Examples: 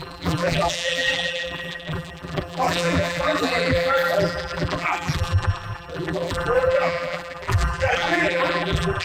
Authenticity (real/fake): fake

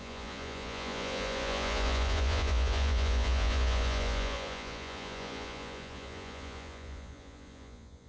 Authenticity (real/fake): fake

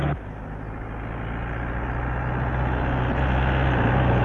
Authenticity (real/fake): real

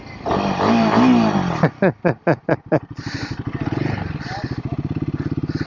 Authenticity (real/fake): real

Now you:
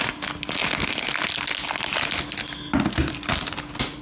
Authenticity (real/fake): real